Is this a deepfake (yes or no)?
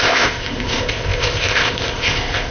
yes